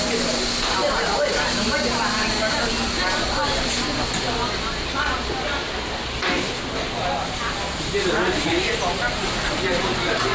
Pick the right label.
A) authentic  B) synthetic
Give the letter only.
A